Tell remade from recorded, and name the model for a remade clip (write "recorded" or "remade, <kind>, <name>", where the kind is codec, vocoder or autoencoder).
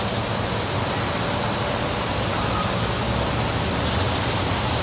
recorded